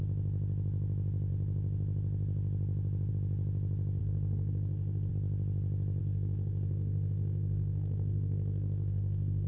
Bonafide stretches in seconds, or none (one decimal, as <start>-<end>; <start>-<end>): 0.0-4.0; 5.1-6.0